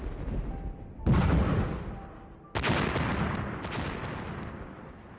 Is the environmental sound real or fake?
real